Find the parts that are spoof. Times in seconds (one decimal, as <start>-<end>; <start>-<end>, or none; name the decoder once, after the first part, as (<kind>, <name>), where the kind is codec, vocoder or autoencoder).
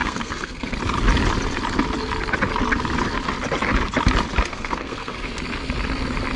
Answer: 0.0-0.7 (codec, SNAC); 4.5-5.3